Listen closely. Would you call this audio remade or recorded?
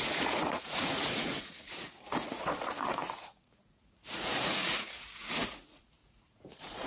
remade